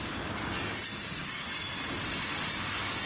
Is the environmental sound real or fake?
real